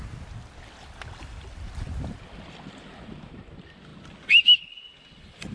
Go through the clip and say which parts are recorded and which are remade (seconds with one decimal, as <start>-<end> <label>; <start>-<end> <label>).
0.0-5.5 recorded

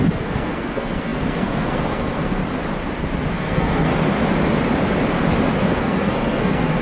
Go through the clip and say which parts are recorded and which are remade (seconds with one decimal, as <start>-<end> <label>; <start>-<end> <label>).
0.0-2.4 remade; 2.4-3.3 recorded; 3.3-3.9 remade; 3.9-5.6 recorded; 5.6-6.8 remade

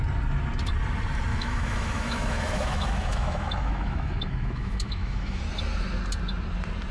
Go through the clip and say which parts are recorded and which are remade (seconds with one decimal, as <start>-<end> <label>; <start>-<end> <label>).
0.0-1.3 recorded; 1.3-5.4 remade; 5.4-6.9 recorded

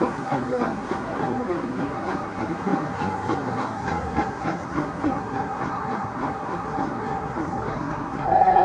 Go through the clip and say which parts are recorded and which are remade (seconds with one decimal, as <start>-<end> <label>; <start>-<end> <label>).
0.0-8.6 remade

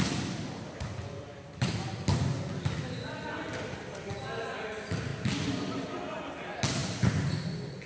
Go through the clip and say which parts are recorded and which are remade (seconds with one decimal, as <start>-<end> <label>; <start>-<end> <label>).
0.0-7.9 recorded